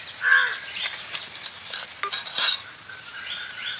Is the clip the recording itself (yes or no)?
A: yes